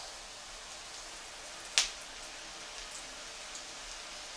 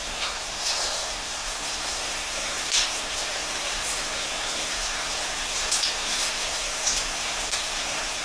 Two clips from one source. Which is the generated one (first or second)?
second